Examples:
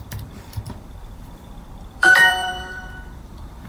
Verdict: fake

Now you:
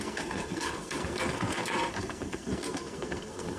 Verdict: fake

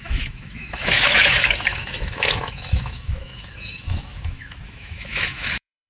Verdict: fake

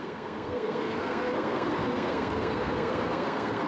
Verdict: fake